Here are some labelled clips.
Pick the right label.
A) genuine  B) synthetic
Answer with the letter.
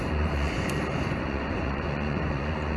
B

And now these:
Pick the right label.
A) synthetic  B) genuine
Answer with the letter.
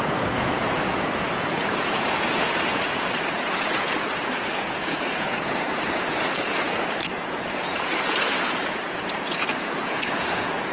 A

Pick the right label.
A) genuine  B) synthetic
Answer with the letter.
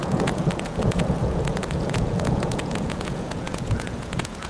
B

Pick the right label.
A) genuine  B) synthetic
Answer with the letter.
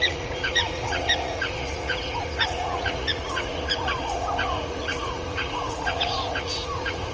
B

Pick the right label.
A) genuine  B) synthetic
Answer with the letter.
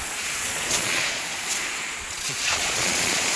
B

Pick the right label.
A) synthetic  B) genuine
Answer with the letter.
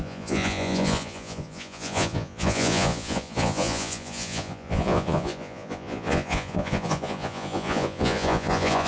A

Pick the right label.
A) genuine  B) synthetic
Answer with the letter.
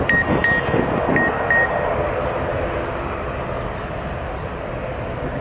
A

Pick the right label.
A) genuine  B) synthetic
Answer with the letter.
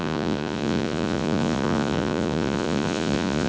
B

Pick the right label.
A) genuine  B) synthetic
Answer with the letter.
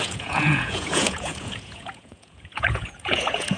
B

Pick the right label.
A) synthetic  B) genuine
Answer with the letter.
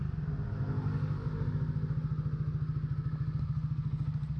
B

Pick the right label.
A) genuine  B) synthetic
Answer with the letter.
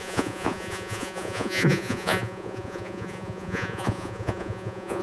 B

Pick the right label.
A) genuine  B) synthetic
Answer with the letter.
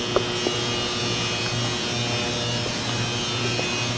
A